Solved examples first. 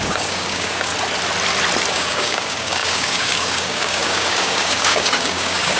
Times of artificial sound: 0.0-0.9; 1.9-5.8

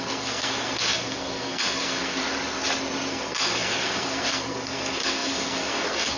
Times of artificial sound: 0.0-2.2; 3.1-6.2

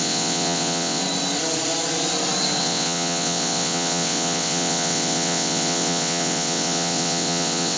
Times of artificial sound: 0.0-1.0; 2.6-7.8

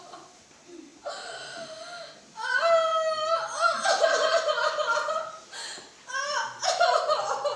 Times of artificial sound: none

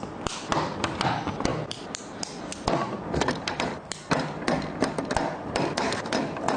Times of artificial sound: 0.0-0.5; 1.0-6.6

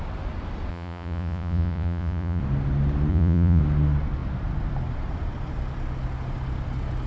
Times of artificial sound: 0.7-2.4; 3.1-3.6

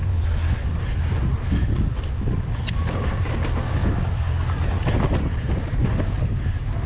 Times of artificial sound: none